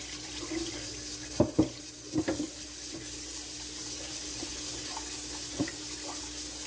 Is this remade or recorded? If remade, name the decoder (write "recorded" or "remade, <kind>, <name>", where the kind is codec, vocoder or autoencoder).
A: remade, vocoder, BigVGAN v2